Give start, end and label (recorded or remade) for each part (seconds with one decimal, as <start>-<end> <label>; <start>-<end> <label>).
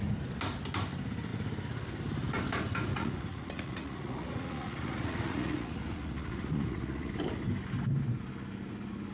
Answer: 0.0-2.9 recorded; 2.9-7.1 remade; 7.1-9.1 recorded